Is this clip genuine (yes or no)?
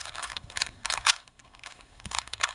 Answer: no